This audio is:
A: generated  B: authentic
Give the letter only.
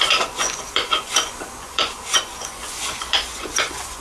A